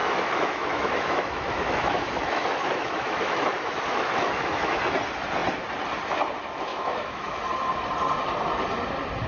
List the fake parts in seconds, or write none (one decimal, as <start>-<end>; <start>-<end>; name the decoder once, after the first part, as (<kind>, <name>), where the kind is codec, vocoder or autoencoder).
0.0-4.8 (autoencoder, DAC-VAE); 6.7-7.4